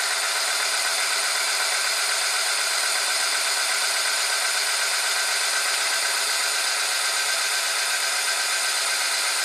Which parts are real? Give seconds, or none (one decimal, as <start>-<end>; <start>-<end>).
0.0-9.4